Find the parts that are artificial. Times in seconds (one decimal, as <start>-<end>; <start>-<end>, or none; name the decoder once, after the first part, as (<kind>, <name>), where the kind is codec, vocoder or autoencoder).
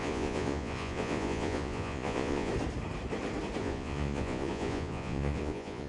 0.0-2.5 (vocoder, Vocos); 3.6-5.9